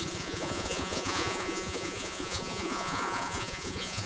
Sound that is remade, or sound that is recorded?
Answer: remade